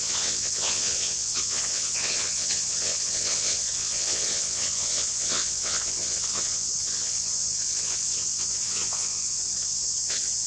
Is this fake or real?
fake